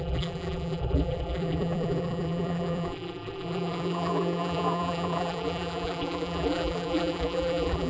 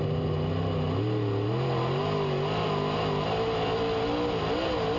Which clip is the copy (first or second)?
first